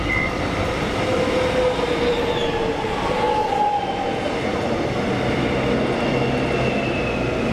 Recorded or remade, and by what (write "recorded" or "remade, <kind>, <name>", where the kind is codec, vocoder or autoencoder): recorded